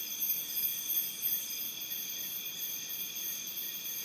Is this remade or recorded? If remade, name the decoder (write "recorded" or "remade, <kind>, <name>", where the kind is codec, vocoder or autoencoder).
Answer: recorded